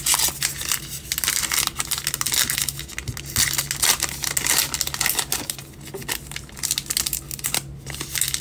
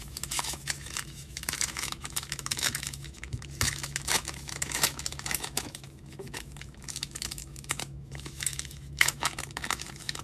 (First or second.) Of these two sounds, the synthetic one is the second